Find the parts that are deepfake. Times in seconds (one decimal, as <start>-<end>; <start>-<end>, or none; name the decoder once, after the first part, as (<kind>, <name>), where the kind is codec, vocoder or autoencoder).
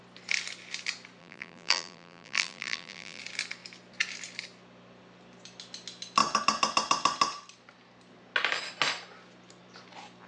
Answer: 1.2-3.2 (vocoder, BigVGAN v2)